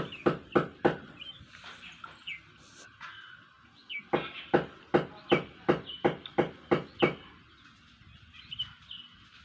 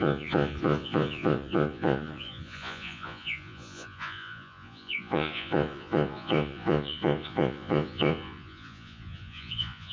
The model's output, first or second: second